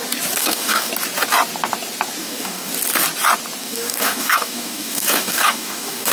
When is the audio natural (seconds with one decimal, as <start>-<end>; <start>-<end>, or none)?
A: 0.0-0.4; 0.9-2.2; 2.7-3.6